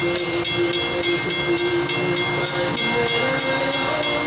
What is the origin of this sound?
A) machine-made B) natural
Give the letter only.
B